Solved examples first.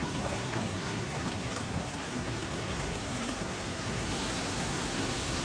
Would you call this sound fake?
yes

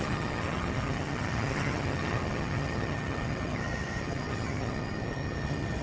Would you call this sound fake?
yes